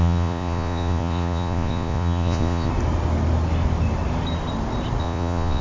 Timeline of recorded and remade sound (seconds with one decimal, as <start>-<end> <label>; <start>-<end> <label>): 0.0-2.7 remade; 2.7-5.0 recorded; 5.0-5.6 remade